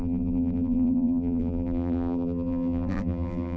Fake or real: fake